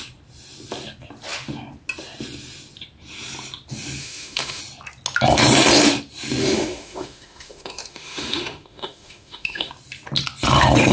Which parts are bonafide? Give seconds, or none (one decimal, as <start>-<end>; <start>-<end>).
0.0-4.0; 4.6-6.4; 9.7-10.9